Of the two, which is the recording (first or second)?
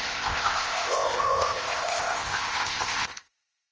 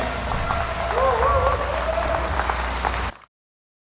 second